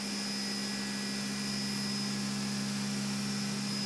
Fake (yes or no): no